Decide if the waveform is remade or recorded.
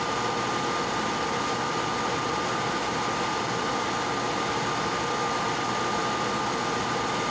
recorded